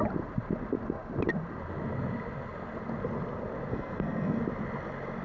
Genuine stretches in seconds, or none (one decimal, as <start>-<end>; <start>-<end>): 0.0-3.7; 4.4-5.2